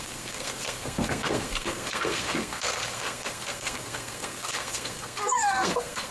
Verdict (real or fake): fake